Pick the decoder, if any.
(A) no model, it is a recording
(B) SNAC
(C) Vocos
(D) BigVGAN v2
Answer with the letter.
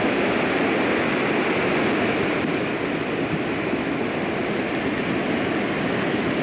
A